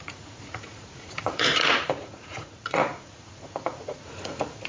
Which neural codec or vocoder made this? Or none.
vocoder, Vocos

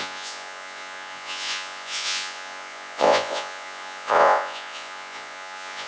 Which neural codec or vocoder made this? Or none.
vocoder, Vocos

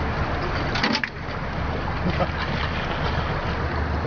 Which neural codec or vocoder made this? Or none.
none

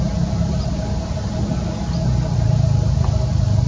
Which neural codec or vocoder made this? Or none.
none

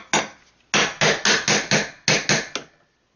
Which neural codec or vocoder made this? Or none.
none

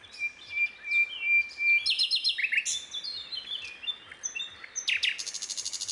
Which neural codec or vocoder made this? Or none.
none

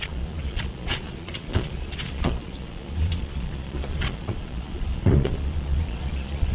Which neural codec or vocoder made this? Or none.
vocoder, Vocos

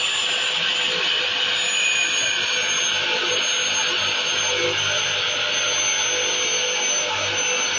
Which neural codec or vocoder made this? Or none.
none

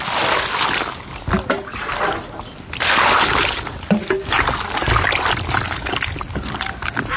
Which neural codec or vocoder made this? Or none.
none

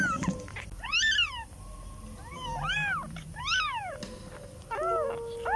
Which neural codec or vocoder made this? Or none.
none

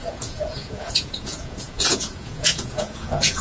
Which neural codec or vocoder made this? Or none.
vocoder, Vocos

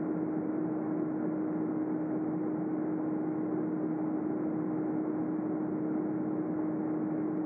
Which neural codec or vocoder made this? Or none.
none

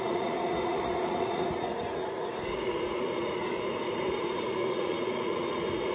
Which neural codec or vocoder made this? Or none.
vocoder, Vocos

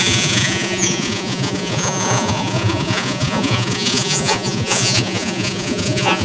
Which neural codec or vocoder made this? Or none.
vocoder, Vocos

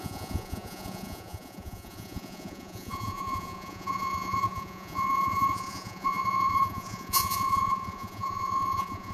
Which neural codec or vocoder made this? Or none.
vocoder, Vocos